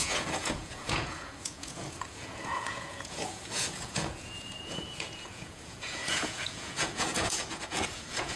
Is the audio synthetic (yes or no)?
yes